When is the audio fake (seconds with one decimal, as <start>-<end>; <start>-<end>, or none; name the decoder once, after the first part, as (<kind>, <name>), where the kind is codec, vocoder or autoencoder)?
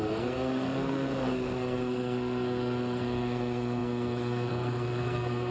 0.0-5.5 (codec, SNAC)